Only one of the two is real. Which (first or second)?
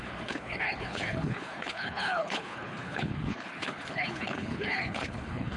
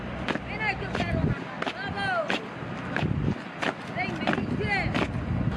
second